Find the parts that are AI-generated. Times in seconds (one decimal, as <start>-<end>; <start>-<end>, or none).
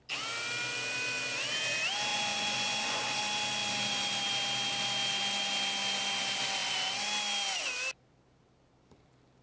2.1-3.2